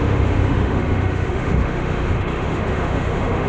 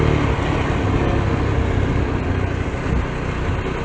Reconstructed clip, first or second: first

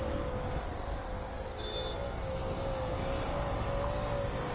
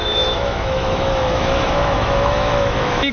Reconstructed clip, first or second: second